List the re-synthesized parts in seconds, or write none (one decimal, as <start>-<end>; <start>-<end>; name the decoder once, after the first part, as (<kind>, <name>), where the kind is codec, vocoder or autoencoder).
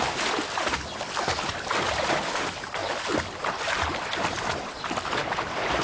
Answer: none